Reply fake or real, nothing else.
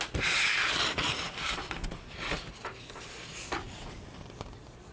real